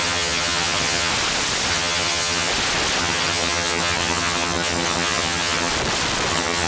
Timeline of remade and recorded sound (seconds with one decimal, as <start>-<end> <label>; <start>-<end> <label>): 0.0-1.1 remade; 1.1-1.7 recorded; 1.7-2.5 remade; 2.5-3.0 recorded; 3.0-5.7 remade; 5.7-6.3 recorded; 6.3-6.7 remade